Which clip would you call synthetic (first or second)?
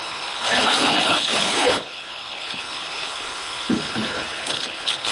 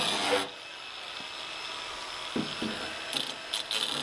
first